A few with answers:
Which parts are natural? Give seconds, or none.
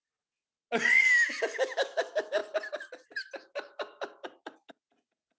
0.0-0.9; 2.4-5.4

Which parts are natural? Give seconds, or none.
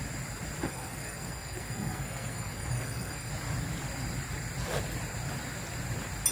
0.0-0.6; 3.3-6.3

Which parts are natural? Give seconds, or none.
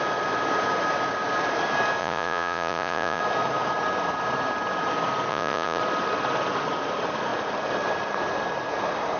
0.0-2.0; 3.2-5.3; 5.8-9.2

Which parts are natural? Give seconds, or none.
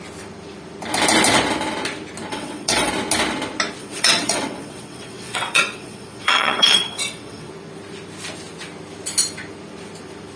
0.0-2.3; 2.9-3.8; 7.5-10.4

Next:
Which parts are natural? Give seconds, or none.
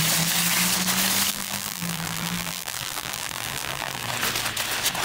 0.0-1.3; 4.1-5.0